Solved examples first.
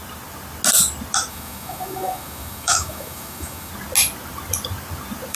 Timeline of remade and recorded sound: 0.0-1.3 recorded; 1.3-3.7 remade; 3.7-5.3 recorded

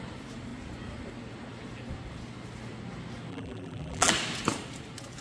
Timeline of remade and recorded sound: 0.0-3.3 recorded; 3.3-4.1 remade; 4.1-5.2 recorded

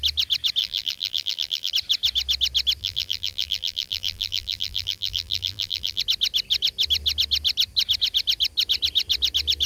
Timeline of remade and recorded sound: 0.0-0.6 recorded; 0.6-1.7 remade; 1.7-2.8 recorded; 2.8-6.0 remade; 6.0-9.7 recorded

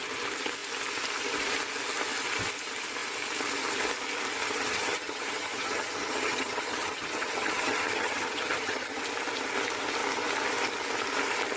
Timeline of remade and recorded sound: 0.0-4.4 recorded; 4.4-9.0 remade; 9.0-11.6 recorded

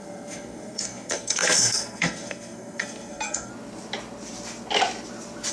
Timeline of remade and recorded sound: 0.0-3.5 remade; 3.5-5.5 recorded

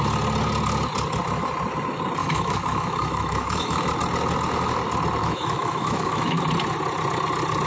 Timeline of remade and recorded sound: 0.0-2.2 recorded; 2.2-3.9 remade; 3.9-5.2 recorded; 5.2-6.4 remade; 6.4-7.7 recorded